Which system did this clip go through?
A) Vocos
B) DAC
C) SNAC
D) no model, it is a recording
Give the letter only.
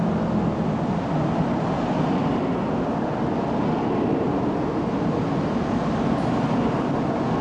D